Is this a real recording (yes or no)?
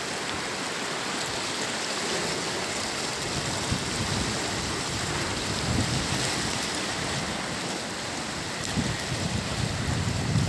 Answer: yes